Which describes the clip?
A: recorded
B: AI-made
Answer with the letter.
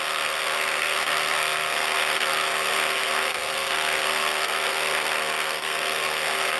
B